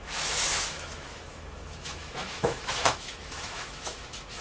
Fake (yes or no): yes